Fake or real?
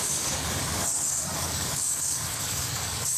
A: fake